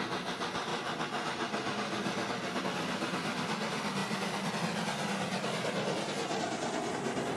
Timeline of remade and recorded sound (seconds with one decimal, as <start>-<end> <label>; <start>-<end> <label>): 0.0-7.4 recorded